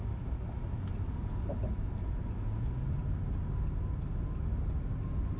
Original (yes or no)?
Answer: yes